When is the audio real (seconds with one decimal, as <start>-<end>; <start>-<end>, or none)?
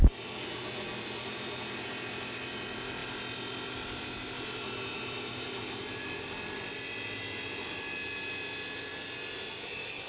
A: 0.0-10.1